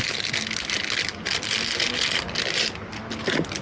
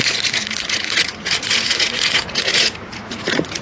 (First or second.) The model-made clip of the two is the second